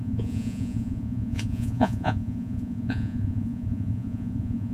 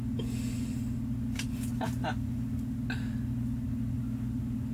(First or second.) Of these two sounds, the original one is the second